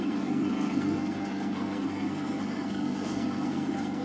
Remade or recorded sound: remade